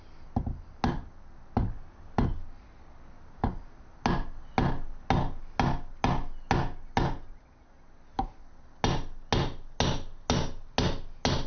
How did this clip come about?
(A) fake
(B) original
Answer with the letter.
B